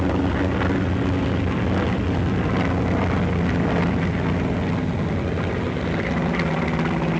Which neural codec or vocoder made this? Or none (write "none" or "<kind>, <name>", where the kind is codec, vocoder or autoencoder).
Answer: none